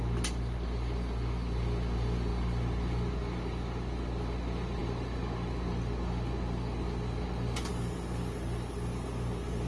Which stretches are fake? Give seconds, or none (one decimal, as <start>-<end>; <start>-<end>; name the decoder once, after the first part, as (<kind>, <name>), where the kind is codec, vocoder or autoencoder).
none